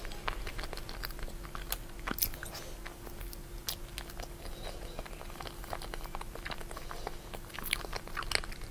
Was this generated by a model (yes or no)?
no